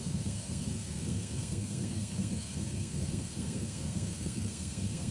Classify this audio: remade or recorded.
remade